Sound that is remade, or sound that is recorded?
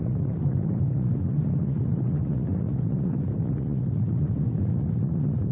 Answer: remade